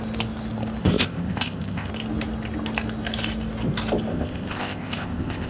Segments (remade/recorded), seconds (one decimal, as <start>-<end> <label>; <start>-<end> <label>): 0.0-0.8 recorded; 0.8-1.9 remade; 1.9-4.1 recorded; 4.1-5.5 remade